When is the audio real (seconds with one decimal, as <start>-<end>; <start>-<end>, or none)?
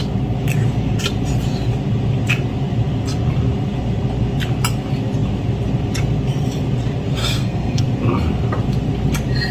0.0-7.2; 7.8-9.5